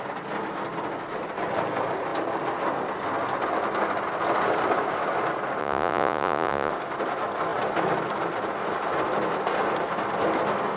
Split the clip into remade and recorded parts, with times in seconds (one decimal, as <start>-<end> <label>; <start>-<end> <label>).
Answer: 0.0-5.6 recorded; 5.6-6.7 remade; 6.7-10.8 recorded